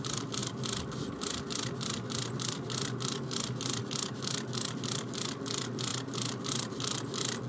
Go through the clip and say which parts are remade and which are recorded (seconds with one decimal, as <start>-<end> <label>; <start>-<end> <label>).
0.0-7.5 recorded